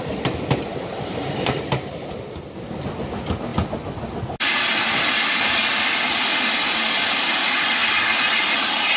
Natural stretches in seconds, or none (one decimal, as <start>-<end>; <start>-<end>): 0.0-0.7; 2.2-9.0